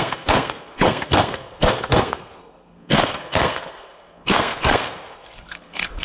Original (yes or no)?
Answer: no